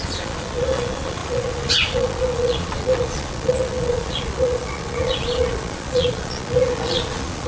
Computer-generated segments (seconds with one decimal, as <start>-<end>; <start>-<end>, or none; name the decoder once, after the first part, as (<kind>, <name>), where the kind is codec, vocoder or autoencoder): 0.0-7.5 (vocoder, Vocos)